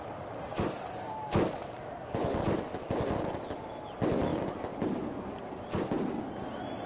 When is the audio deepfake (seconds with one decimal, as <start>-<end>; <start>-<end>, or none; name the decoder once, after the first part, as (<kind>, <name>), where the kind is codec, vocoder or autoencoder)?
none